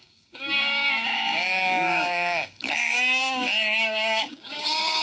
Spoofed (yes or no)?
yes